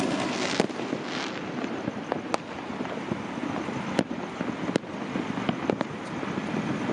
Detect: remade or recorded recorded